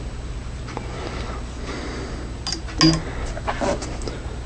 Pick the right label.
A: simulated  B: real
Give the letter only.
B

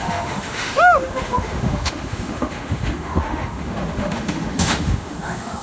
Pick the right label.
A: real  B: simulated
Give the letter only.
B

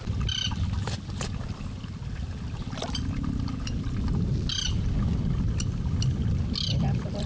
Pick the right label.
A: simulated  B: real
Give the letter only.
B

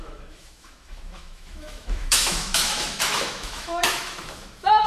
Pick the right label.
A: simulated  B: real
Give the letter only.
A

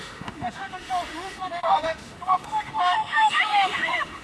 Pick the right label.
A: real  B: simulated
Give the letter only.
B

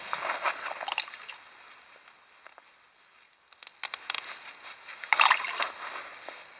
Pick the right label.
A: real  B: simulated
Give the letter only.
A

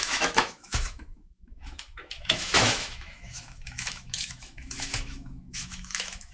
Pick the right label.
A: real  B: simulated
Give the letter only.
B